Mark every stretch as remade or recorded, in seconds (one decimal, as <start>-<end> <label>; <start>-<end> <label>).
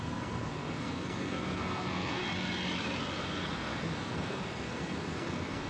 0.0-2.2 remade; 2.2-3.2 recorded; 3.2-5.7 remade